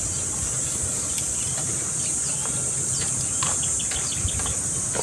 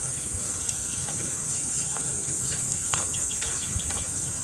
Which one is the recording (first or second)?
first